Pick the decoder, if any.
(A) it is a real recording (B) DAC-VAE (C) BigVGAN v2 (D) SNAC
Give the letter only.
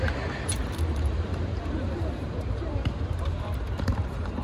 C